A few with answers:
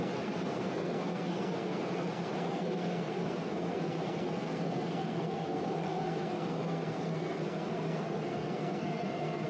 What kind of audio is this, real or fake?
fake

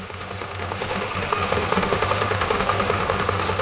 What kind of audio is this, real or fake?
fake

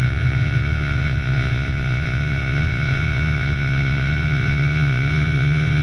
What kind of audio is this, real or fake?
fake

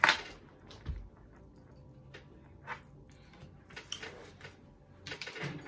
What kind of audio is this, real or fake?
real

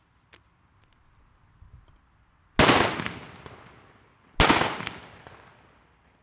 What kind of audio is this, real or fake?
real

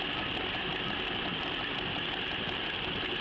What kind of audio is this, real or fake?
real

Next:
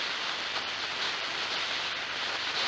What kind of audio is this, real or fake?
real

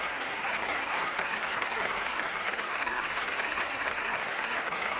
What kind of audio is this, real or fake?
fake